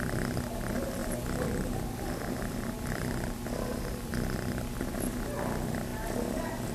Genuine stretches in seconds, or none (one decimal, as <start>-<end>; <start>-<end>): 0.0-1.0; 4.9-6.7